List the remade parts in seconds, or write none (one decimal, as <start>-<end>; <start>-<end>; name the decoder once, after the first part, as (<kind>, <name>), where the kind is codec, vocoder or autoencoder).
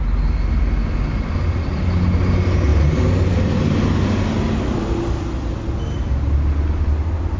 none